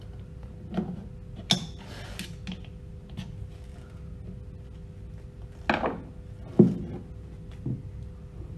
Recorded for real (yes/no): yes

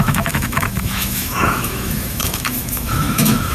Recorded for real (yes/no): no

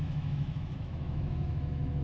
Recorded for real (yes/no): no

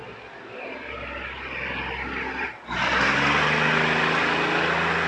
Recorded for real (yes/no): yes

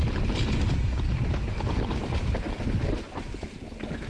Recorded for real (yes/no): yes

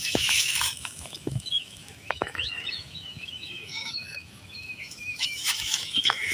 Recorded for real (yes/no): no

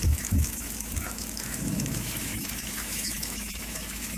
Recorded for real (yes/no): no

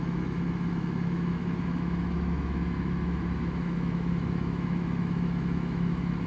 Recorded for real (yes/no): no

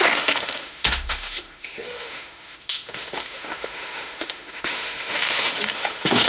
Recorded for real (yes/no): no